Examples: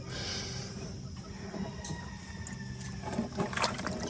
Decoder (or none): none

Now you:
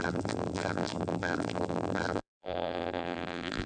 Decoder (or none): vocoder, BigVGAN v2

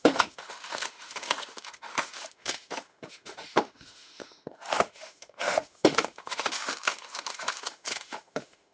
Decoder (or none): autoencoder, DAC-VAE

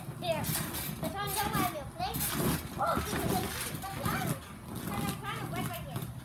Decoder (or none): none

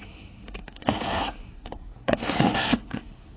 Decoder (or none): codec, SNAC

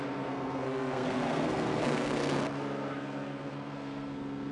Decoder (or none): codec, SNAC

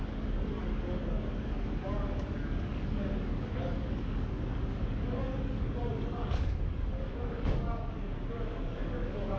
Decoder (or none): codec, DAC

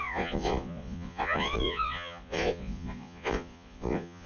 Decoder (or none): vocoder, Vocos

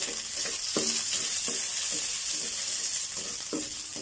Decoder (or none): none